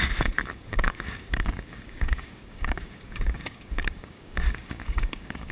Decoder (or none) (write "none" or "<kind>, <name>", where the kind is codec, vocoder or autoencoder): codec, DAC